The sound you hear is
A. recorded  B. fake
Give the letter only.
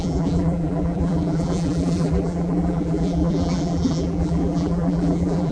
B